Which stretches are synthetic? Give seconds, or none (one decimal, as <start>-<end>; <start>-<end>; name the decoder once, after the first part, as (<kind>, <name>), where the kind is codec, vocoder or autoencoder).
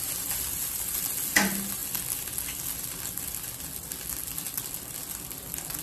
none